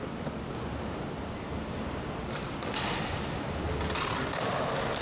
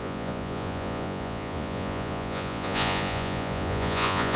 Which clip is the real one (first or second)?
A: first